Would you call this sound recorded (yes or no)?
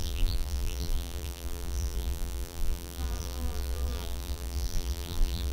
no